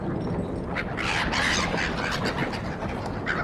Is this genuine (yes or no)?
yes